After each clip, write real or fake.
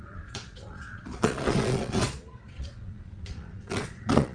fake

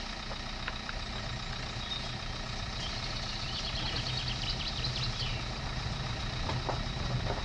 real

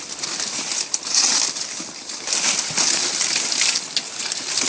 real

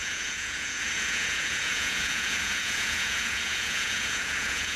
fake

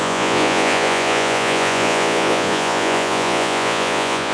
fake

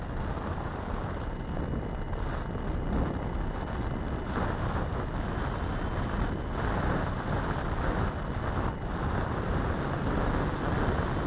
real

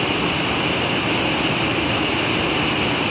real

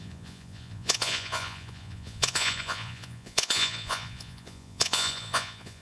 fake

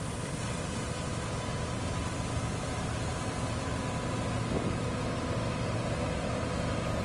real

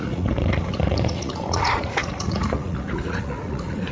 fake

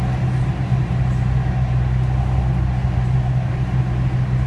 real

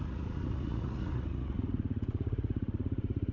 fake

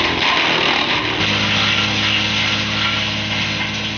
real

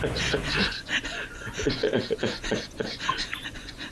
fake